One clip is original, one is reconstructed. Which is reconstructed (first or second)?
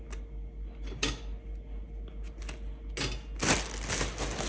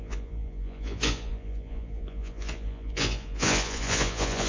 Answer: second